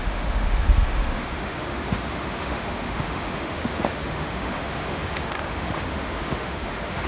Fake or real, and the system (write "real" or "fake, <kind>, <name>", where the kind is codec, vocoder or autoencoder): fake, autoencoder, DAC-VAE